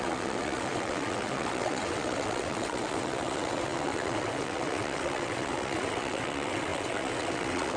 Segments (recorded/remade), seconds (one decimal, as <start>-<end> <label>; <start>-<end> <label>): 0.0-7.8 remade